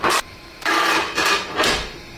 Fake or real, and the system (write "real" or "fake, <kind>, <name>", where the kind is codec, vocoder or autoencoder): real